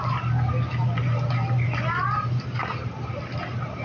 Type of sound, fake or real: real